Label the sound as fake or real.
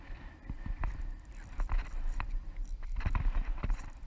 fake